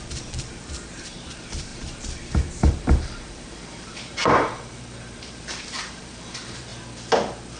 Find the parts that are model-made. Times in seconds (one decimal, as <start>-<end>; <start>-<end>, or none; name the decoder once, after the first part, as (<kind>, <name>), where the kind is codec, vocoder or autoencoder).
0.0-6.7 (vocoder, BigVGAN v2)